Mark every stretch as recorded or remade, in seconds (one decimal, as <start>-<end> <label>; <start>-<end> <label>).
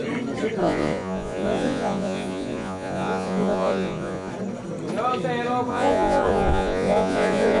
0.0-0.6 recorded; 0.6-4.3 remade; 4.3-5.7 recorded; 5.7-7.6 remade